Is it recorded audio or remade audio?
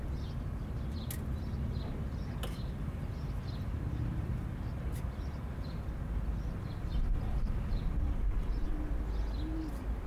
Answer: recorded